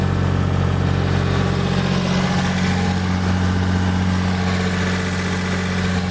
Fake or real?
real